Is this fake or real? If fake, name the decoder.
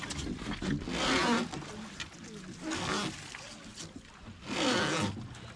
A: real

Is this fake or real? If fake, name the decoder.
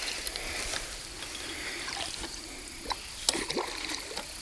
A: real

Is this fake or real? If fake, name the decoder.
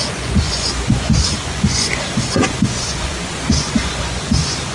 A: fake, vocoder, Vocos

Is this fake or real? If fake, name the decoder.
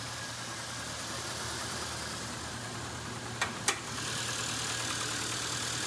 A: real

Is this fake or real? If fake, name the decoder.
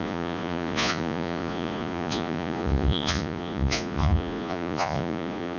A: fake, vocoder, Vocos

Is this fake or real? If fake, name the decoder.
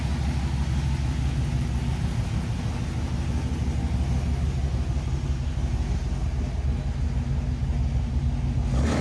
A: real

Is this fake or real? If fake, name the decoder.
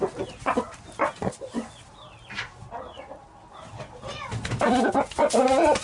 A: real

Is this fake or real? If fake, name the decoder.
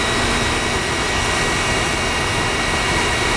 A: real